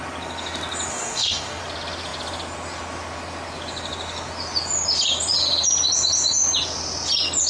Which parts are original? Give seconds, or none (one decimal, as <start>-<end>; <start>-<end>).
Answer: 0.0-0.9; 1.6-7.5